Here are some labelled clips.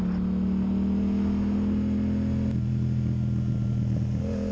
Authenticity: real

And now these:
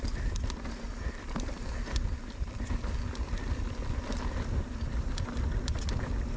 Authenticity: real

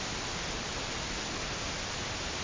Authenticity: real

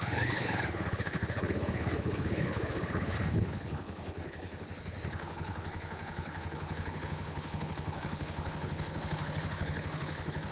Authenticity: fake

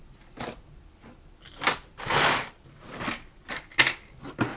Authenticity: real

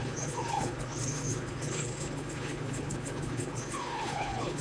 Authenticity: fake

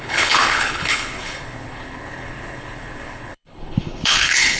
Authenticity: fake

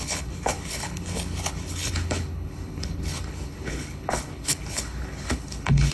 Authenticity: fake